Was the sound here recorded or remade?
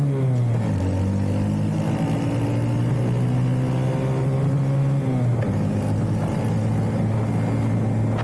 recorded